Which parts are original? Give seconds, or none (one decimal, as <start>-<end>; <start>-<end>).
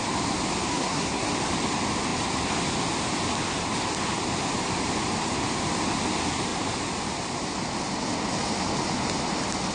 0.0-0.7; 1.3-9.7